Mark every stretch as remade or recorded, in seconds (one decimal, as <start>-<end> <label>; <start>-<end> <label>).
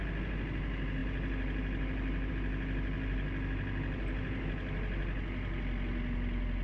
0.0-6.6 recorded